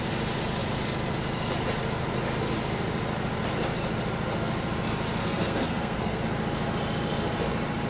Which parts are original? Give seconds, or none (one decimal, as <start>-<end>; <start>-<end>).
0.0-5.2; 6.2-7.9